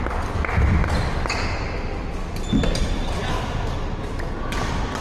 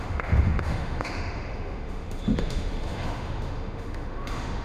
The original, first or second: first